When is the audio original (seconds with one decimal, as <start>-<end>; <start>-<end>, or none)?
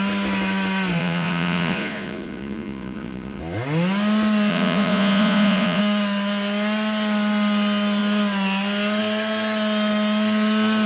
0.0-1.0; 3.4-4.5; 5.8-10.9